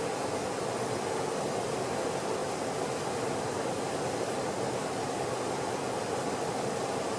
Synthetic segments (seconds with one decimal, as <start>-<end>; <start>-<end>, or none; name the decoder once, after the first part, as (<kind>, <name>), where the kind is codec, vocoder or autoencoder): none